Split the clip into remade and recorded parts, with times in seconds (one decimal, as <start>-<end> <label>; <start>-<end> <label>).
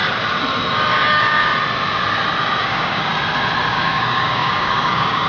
0.0-0.9 recorded; 0.9-1.5 remade; 1.5-2.6 recorded; 2.6-3.1 remade; 3.1-3.6 recorded; 3.6-5.3 remade